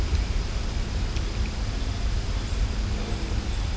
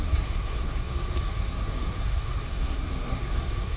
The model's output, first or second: second